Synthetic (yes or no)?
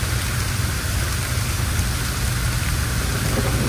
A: no